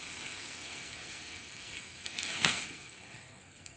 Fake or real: fake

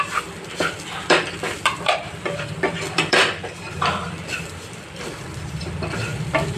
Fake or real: fake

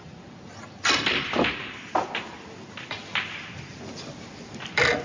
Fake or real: fake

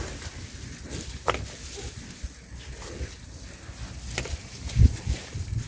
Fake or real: real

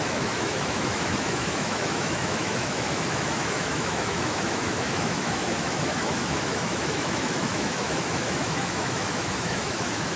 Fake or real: fake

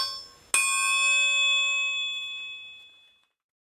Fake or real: real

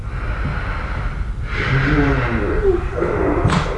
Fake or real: real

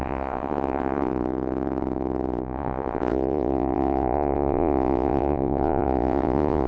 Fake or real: fake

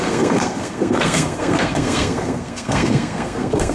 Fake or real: fake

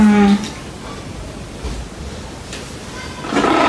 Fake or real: real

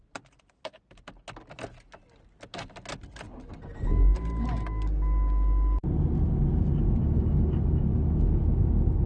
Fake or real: real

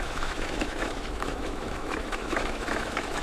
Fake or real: fake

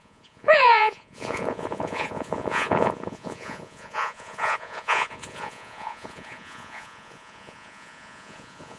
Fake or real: fake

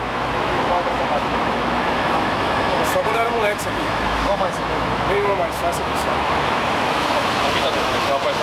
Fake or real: fake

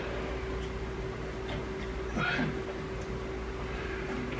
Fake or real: real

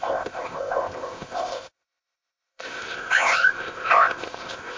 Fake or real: fake